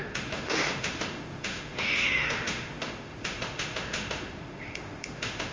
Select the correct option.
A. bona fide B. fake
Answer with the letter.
B